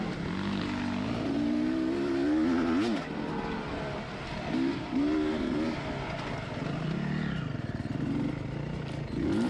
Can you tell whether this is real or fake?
real